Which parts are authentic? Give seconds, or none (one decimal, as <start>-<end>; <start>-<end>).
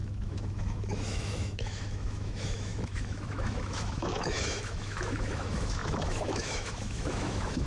none